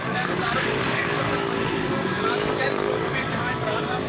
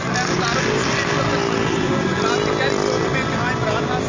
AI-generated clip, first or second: first